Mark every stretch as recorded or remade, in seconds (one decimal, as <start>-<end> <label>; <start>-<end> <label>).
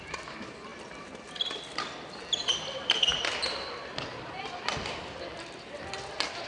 0.0-0.7 recorded; 0.7-2.0 remade; 2.0-3.1 recorded; 3.1-4.4 remade; 4.4-6.5 recorded